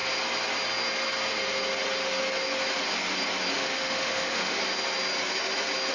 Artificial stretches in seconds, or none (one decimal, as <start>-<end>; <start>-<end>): 3.5-4.6